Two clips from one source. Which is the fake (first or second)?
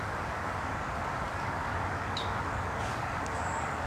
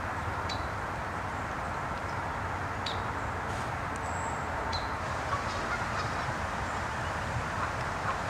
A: first